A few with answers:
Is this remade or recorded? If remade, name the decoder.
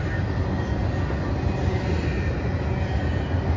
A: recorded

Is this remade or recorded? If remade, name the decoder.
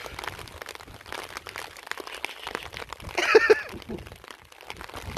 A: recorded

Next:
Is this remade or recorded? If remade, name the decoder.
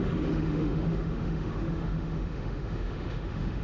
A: remade, autoencoder, DAC-VAE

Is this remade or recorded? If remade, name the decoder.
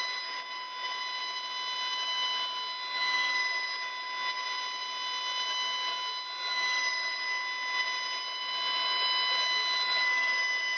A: recorded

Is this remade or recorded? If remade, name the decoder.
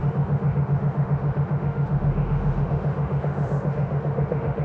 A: remade, autoencoder, DAC-VAE